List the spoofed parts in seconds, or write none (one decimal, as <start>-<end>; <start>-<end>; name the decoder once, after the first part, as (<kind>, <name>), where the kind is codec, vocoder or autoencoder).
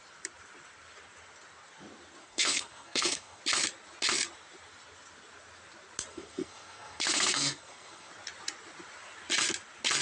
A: 2.2-3.4 (codec, SNAC); 6.1-8.1